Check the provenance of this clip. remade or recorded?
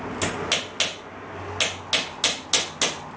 recorded